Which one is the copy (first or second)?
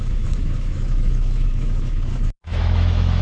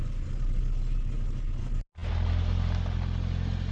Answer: first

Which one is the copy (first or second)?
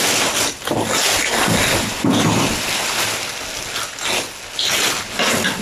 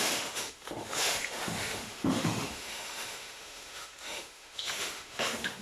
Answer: second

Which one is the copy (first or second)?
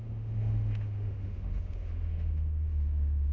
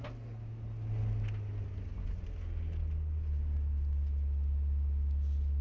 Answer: first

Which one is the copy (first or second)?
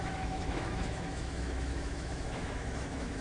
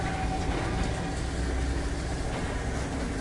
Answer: first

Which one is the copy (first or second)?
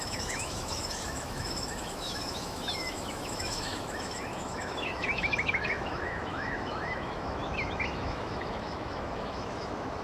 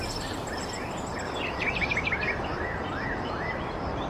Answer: first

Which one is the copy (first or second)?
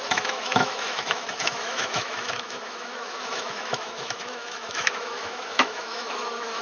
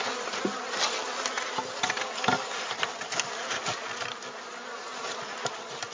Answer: first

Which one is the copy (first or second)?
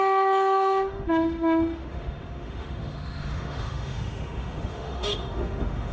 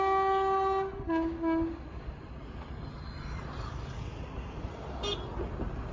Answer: first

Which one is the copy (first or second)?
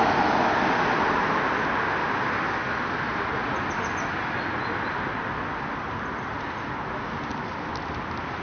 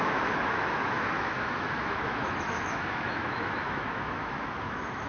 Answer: second